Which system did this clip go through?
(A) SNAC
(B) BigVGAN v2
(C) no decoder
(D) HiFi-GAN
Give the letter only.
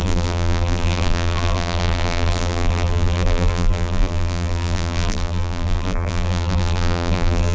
B